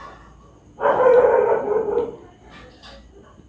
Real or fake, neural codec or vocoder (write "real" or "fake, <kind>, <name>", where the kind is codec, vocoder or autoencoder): real